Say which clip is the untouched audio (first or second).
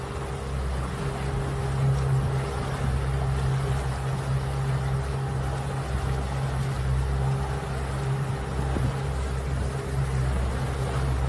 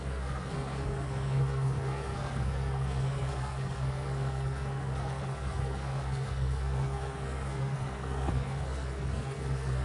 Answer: first